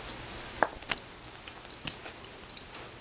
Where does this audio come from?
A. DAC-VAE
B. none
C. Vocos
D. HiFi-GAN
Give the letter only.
B